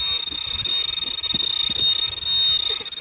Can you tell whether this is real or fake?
real